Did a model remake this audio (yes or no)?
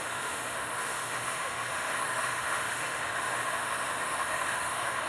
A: yes